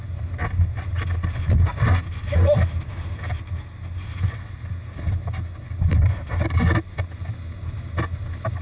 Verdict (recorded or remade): recorded